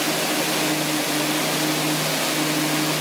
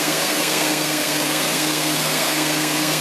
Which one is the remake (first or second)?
second